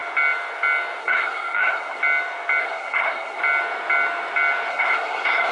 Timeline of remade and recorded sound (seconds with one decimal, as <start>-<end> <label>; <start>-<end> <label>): 0.0-1.0 recorded; 1.0-2.0 remade; 2.0-2.6 recorded; 2.6-3.4 remade; 3.4-4.7 recorded; 4.7-5.5 remade